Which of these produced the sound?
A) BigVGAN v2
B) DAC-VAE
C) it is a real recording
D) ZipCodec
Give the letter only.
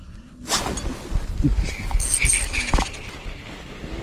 C